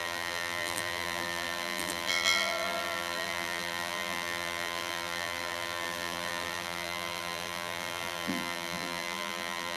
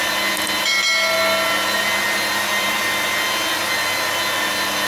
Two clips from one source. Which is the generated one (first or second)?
first